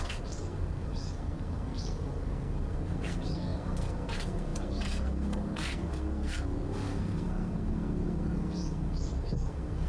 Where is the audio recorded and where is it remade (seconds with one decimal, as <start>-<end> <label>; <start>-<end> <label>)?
0.0-9.9 remade